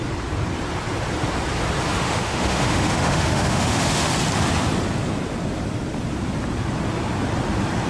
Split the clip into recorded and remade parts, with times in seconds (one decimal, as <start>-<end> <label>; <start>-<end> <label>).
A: 0.0-2.0 recorded; 2.0-4.1 remade; 4.1-7.9 recorded